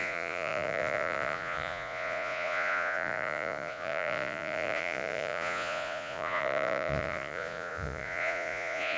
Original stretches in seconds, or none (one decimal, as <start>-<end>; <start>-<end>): none